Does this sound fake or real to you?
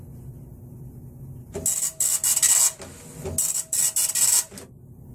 real